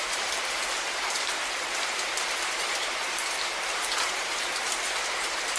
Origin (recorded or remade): remade